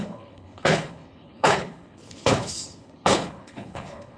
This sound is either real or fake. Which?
fake